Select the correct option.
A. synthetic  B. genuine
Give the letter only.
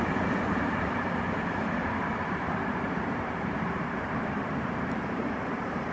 A